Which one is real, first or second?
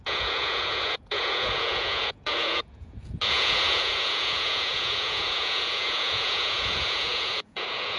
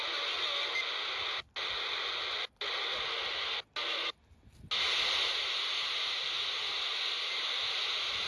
second